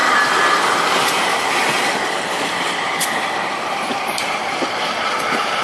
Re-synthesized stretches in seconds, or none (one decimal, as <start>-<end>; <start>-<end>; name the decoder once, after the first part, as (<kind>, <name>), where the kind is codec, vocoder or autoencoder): none